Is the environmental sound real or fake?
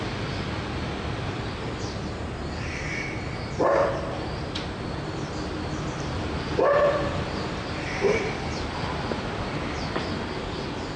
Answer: fake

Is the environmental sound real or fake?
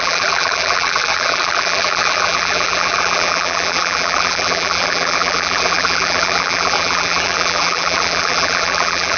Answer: fake